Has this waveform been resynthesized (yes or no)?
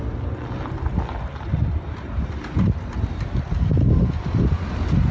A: no